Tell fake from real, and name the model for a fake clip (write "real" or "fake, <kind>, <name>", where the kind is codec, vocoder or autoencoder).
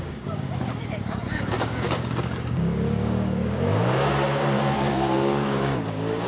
fake, codec, DAC